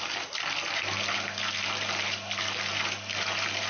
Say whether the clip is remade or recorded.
recorded